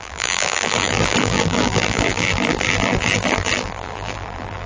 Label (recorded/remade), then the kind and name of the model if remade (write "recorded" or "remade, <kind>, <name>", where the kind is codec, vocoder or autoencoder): remade, vocoder, BigVGAN v2